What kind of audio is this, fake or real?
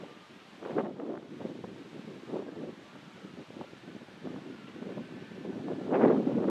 fake